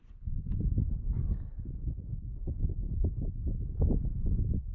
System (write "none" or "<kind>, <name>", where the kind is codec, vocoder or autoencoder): none